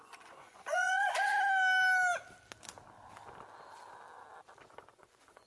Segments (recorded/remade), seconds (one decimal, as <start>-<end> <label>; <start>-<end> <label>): 0.0-1.3 remade; 1.3-4.6 recorded; 4.6-5.5 remade